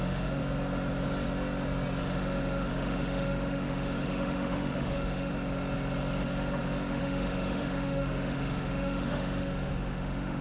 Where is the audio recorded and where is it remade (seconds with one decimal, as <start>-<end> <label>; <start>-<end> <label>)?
0.0-0.4 remade; 0.4-2.0 recorded; 2.0-5.3 remade; 5.3-6.9 recorded; 6.9-10.4 remade